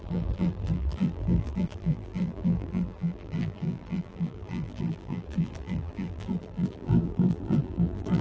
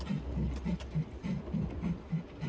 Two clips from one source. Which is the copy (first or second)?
first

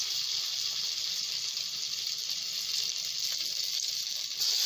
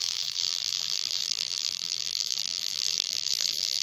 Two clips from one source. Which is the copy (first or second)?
second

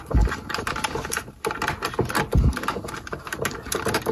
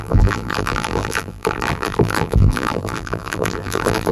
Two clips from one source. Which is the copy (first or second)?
second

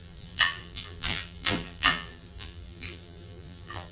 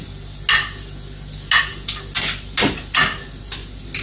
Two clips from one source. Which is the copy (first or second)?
first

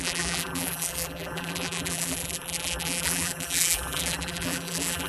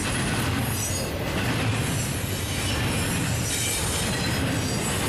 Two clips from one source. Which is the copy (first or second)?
first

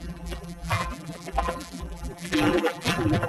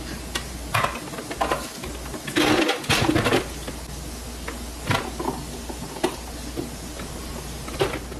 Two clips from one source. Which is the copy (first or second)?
first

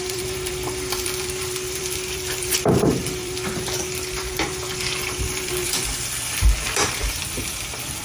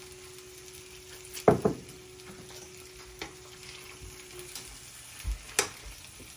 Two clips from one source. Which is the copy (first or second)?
first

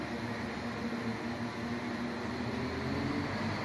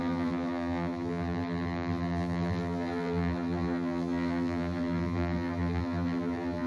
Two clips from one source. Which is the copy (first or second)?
second